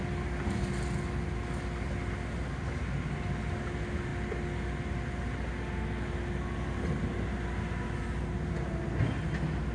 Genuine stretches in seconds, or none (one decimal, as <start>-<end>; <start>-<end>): 0.0-9.7